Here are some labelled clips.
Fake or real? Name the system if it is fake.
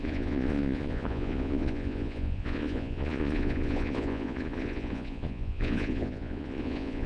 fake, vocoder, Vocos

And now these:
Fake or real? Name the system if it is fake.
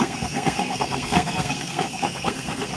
fake, codec, SNAC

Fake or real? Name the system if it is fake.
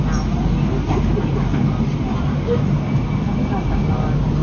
real